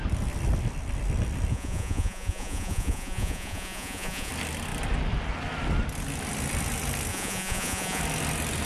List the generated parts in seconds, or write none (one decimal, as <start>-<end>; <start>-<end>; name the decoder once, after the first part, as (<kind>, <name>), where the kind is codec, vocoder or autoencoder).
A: 1.5-4.3 (vocoder, Vocos); 7.1-8.0